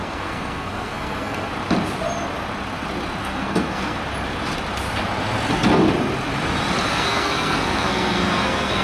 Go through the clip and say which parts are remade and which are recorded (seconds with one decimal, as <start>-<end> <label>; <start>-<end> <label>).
0.0-1.5 remade; 1.5-3.2 recorded; 3.2-4.0 remade; 4.0-6.9 recorded; 6.9-8.8 remade